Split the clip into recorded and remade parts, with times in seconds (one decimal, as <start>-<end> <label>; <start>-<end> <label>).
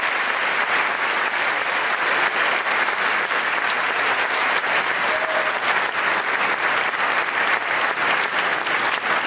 0.0-4.1 remade; 4.1-6.2 recorded; 6.2-8.0 remade; 8.0-9.3 recorded